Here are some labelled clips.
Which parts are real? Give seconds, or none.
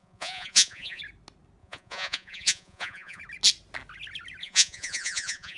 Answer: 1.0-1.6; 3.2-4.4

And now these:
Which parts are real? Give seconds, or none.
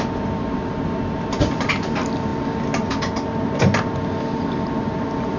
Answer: 0.0-5.4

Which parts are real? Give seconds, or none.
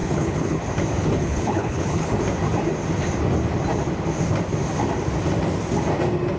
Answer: 0.6-1.0; 2.1-6.4